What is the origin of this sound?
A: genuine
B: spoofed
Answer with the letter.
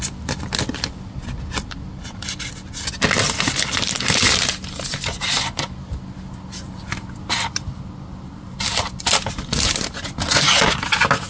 A